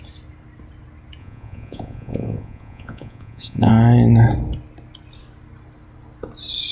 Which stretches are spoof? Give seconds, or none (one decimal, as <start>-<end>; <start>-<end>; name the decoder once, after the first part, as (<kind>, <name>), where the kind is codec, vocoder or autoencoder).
1.2-3.7 (vocoder, Vocos)